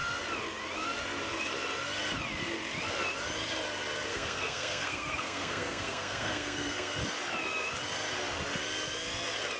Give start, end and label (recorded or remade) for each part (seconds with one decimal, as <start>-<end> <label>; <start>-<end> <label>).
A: 0.0-4.1 recorded; 4.1-7.0 remade; 7.0-9.6 recorded